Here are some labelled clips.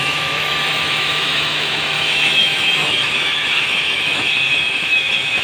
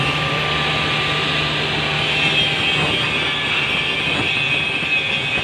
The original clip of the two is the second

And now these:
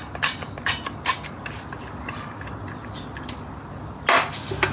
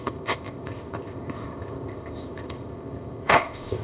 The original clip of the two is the first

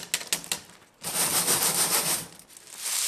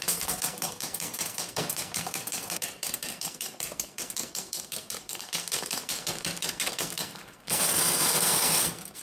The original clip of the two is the first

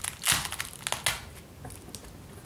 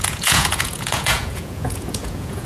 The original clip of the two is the first